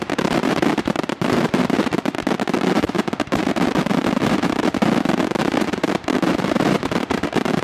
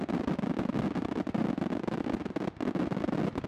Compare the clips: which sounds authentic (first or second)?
second